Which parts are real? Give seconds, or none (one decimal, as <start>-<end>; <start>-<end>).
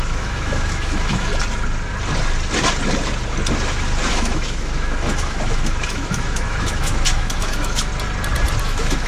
1.3-4.1; 7.9-8.6